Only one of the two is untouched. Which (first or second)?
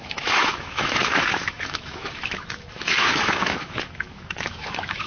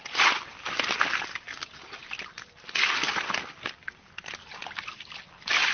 second